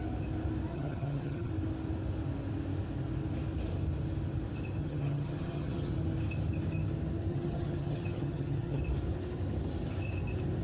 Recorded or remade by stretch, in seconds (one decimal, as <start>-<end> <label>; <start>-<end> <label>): 0.0-0.7 recorded; 0.7-1.5 remade; 1.5-4.8 recorded; 4.8-5.9 remade; 5.9-7.3 recorded; 7.3-8.8 remade; 8.8-10.6 recorded